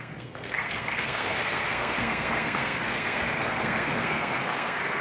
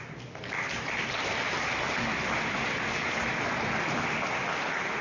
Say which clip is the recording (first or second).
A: second